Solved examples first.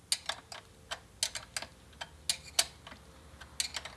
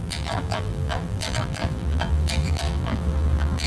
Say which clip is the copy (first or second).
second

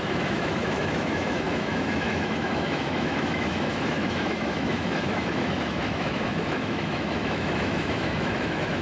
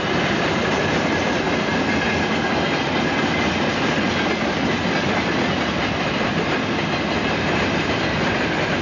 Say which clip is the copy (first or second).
first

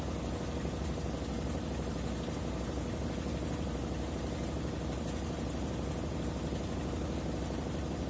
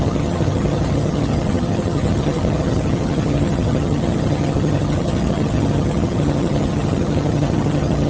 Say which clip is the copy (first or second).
second